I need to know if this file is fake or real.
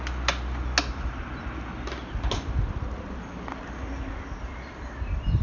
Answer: real